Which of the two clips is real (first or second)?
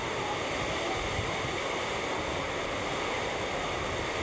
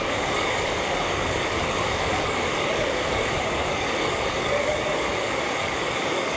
first